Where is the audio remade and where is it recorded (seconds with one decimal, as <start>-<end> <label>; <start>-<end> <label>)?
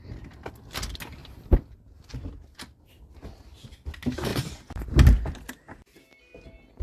0.0-4.3 recorded; 4.3-4.9 remade; 4.9-6.8 recorded